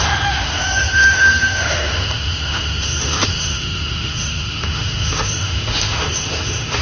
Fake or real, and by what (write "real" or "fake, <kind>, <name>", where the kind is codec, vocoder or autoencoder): fake, autoencoder, DAC-VAE